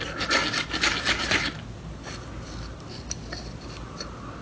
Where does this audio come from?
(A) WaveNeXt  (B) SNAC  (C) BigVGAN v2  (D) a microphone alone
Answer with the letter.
D